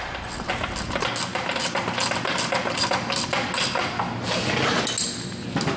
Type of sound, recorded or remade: recorded